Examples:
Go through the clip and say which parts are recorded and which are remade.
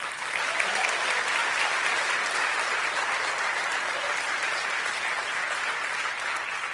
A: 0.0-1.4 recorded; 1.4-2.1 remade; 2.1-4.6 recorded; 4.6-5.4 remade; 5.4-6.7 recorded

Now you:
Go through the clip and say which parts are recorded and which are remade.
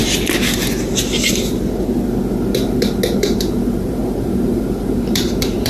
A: 0.0-3.1 recorded; 3.1-5.7 remade